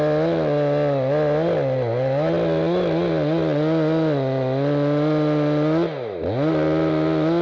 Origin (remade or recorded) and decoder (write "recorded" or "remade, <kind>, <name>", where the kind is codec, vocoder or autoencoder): recorded